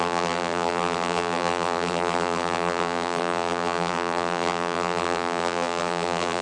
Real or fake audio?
fake